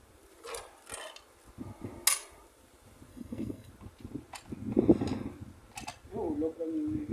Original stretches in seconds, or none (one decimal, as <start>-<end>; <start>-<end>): 0.0-3.1; 3.7-7.1